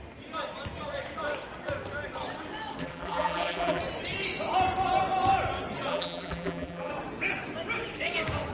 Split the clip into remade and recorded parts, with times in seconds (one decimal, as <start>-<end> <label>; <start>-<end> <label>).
0.0-2.8 recorded; 2.8-3.8 remade; 3.8-5.9 recorded; 5.9-6.9 remade; 6.9-8.5 recorded